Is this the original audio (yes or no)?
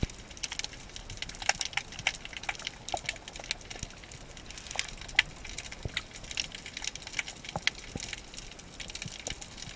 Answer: yes